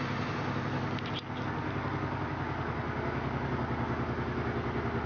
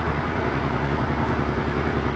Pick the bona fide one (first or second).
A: first